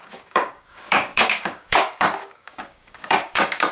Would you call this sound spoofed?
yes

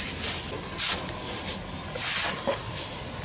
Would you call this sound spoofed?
no